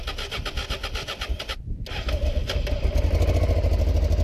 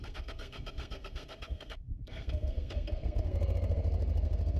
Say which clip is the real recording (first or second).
first